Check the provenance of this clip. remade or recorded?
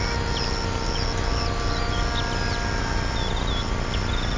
recorded